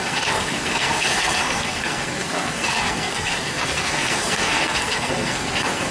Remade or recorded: remade